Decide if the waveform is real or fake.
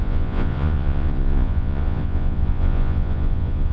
fake